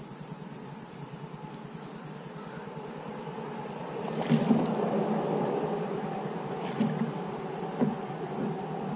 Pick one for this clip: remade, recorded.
remade